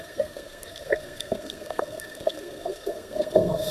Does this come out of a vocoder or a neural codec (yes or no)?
yes